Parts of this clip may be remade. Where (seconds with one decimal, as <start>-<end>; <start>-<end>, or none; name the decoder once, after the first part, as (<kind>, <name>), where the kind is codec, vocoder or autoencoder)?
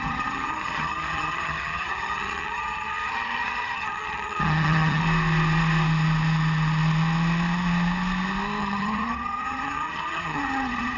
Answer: 0.0-5.0 (vocoder, HiFi-GAN); 8.6-11.0